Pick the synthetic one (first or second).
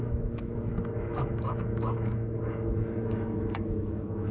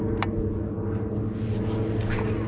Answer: first